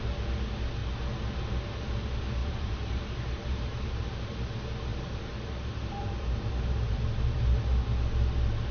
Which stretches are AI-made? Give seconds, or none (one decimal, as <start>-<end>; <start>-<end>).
2.4-4.2; 4.9-7.4